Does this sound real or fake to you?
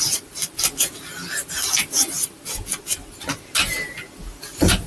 real